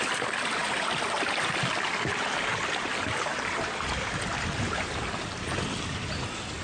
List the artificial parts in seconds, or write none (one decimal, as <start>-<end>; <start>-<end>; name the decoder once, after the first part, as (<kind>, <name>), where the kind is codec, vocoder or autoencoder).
none